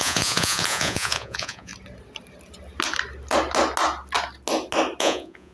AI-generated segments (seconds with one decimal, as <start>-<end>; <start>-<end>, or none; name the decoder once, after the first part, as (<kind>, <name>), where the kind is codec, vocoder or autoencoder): 0.0-1.7 (vocoder, Vocos); 5.0-5.5